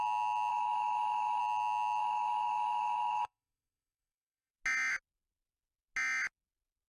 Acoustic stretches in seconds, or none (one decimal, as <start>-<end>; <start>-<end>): 0.0-0.5; 1.4-2.0; 4.5-6.9